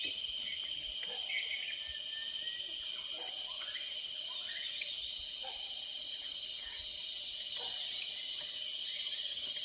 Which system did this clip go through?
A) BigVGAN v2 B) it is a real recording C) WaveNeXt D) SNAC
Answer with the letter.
B